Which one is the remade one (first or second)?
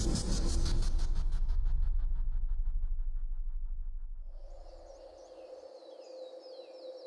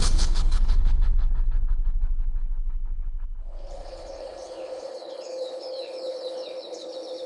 second